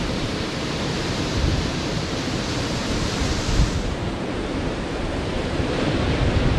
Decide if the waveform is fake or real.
fake